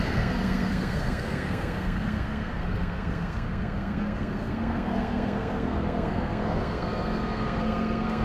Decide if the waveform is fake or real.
fake